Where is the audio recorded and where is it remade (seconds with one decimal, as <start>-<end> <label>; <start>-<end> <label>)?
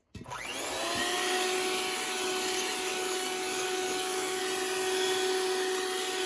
0.0-2.9 recorded; 2.9-4.4 remade; 4.4-6.3 recorded